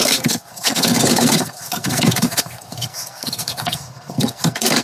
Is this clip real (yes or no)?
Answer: no